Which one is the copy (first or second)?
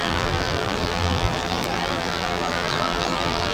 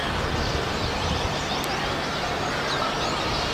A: first